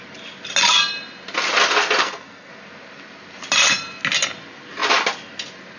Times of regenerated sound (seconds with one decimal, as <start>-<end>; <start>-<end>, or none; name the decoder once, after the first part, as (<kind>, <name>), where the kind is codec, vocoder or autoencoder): 2.0-2.5 (codec, SNAC)